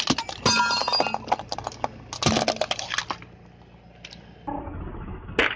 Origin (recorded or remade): recorded